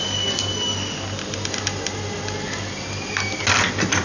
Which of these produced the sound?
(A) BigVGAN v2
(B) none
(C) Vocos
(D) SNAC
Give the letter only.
B